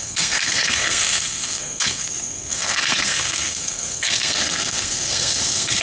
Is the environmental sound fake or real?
fake